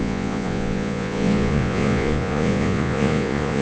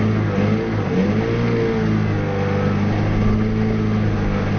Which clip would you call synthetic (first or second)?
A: first